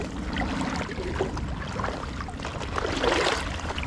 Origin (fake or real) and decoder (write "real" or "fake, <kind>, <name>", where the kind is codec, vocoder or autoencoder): real